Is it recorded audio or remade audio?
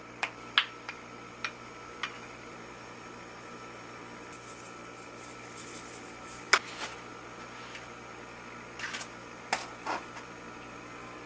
recorded